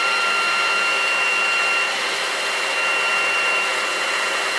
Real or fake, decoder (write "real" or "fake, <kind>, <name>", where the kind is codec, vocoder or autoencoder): fake, vocoder, BigVGAN v2